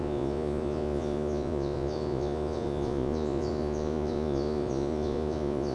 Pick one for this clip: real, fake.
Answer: fake